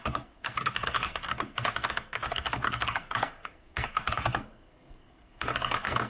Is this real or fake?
fake